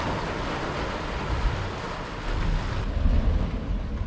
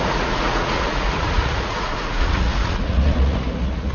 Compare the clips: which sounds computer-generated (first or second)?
second